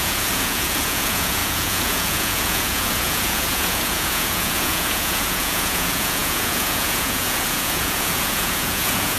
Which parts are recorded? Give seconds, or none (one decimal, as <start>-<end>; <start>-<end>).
none

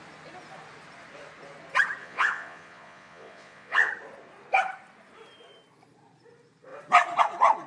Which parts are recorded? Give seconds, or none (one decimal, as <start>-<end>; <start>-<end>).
0.0-2.0; 3.9-7.7

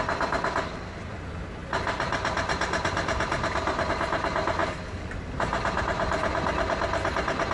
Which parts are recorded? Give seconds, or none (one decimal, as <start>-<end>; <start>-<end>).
0.0-7.5

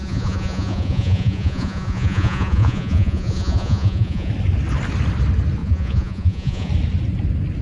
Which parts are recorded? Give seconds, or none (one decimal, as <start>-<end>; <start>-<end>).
4.3-5.6; 6.7-7.6

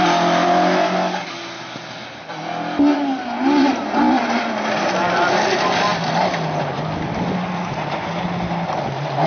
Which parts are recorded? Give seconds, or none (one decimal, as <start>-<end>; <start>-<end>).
0.0-9.3